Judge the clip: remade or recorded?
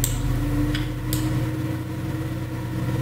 recorded